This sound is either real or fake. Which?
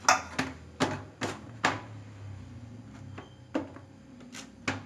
real